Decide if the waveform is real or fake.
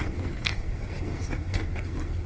fake